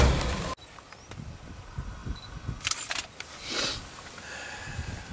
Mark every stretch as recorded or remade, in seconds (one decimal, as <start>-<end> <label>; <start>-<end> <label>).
0.0-2.0 recorded; 2.0-3.3 remade; 3.3-5.1 recorded